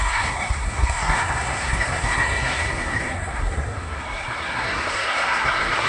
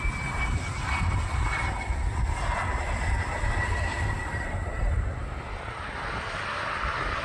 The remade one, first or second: first